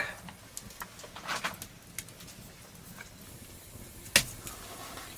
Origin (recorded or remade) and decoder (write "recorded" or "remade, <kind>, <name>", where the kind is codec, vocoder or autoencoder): recorded